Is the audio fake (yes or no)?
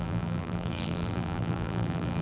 yes